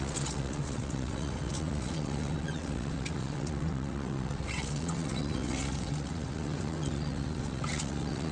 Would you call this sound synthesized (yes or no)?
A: yes